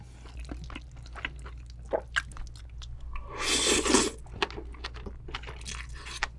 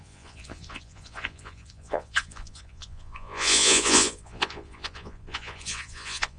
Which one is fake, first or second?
second